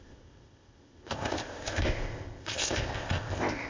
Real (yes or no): no